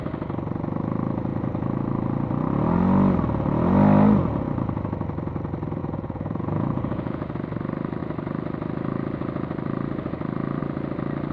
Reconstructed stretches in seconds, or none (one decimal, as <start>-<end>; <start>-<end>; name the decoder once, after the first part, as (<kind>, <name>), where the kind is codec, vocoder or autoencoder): 5.8-7.3 (vocoder, Vocos)